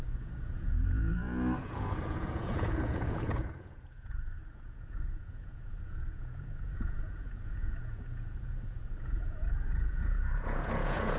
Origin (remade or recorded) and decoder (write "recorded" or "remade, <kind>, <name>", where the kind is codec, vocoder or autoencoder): remade, vocoder, Vocos